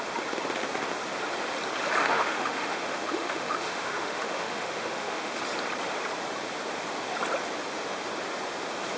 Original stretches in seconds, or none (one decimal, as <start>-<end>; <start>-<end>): 0.0-2.0; 5.4-9.0